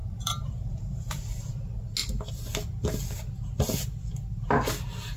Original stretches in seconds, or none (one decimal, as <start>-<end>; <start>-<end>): 1.2-5.2